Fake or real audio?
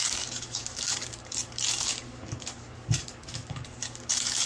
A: fake